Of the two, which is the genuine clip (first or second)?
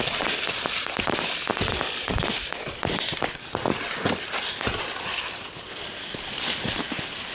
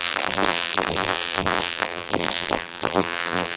first